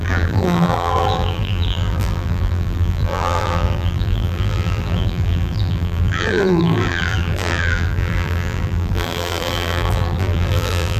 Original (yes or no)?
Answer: no